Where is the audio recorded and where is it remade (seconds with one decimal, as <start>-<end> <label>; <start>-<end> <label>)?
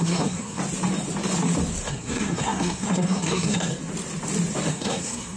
0.0-0.6 remade; 0.6-1.9 recorded; 1.9-3.7 remade; 3.7-4.7 recorded; 4.7-5.4 remade